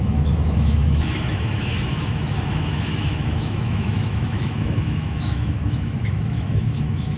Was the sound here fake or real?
fake